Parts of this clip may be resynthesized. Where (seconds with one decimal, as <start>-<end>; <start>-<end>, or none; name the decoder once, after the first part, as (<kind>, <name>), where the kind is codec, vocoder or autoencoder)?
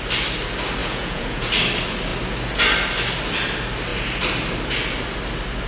0.8-1.5 (vocoder, Vocos)